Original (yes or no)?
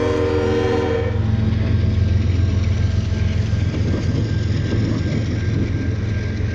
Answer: yes